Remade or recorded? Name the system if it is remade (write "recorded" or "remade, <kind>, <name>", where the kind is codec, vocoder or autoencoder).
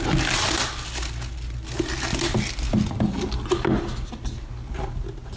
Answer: recorded